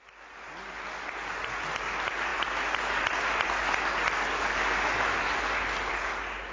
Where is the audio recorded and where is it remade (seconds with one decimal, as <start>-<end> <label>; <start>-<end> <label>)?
0.0-6.5 recorded